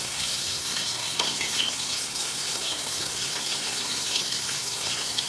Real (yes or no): no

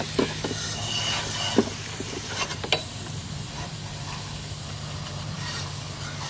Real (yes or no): yes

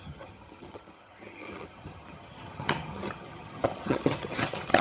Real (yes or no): no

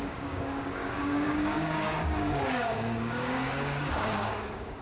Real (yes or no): no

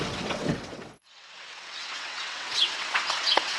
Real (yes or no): no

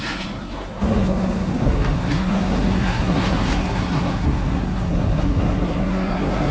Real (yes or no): no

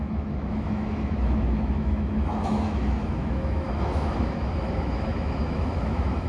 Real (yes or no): no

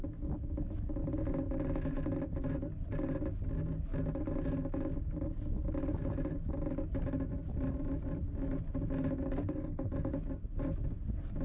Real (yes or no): yes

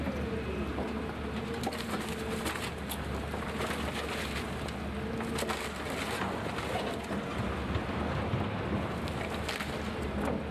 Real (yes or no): yes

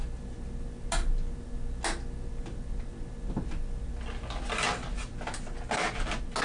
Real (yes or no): yes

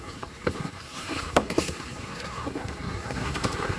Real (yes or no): no